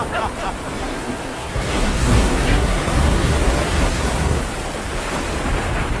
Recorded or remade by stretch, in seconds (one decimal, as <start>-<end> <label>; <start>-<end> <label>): 0.0-0.8 recorded; 0.8-4.4 remade; 4.4-6.0 recorded